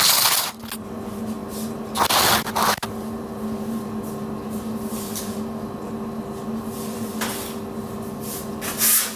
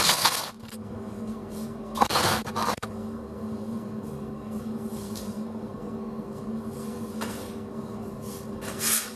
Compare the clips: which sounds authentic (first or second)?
first